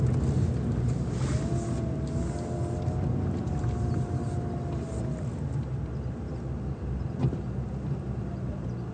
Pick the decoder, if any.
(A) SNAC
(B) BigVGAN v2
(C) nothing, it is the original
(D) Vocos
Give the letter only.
C